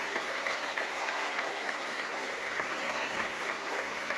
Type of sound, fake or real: fake